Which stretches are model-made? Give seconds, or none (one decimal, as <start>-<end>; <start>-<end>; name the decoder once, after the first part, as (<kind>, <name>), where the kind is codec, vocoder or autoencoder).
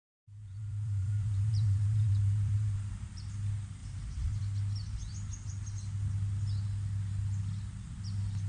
0.4-3.2 (vocoder, BigVGAN v2); 3.8-4.4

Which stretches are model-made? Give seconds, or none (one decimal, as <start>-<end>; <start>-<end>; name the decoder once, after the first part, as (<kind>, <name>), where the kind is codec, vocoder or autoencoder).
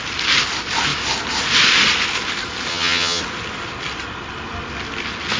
2.7-3.2 (vocoder, HiFi-GAN)